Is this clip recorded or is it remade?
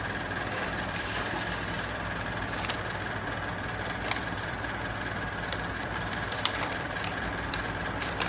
remade